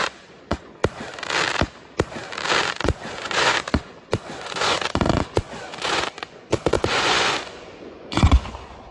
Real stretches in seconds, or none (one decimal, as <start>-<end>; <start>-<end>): 0.8-2.6